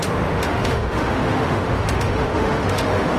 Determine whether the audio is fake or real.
fake